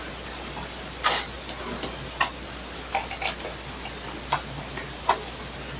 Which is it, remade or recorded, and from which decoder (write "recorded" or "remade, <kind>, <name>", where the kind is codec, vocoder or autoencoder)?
recorded